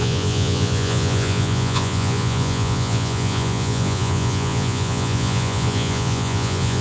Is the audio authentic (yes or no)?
no